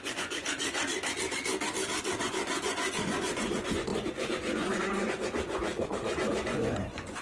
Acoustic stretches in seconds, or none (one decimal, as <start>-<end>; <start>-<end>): 0.9-2.2